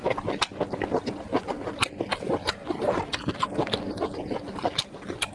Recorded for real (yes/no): yes